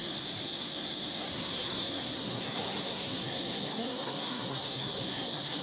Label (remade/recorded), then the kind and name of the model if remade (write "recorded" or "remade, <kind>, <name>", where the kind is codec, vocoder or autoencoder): remade, codec, SNAC